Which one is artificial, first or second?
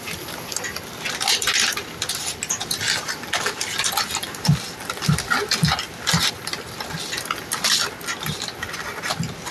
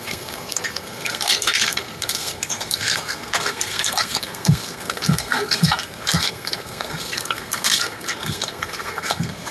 second